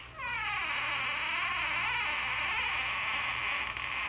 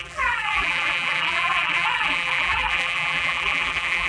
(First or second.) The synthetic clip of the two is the second